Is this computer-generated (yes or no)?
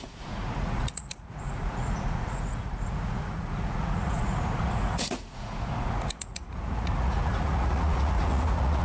yes